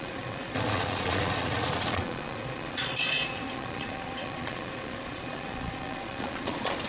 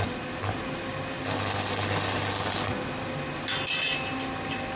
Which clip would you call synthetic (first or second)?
first